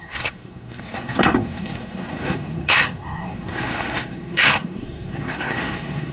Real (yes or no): no